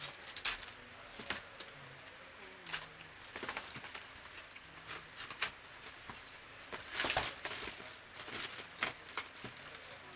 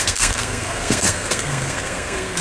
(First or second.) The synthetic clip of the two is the second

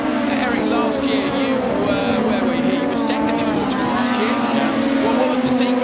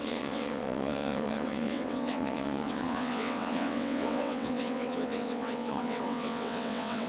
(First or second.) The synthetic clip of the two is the second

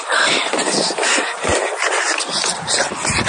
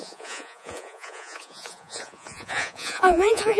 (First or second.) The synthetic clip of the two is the second